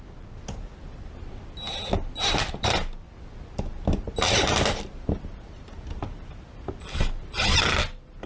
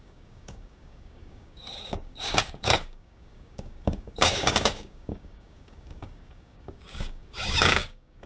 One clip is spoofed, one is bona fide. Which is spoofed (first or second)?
second